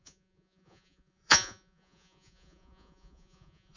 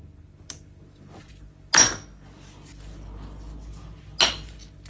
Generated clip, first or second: first